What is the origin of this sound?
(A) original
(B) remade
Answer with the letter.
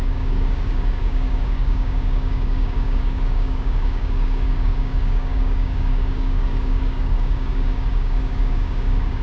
B